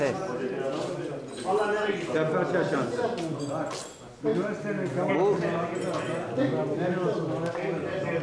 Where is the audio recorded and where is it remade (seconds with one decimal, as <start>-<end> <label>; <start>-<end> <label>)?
0.0-8.2 recorded